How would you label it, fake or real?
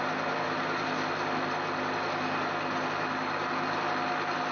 real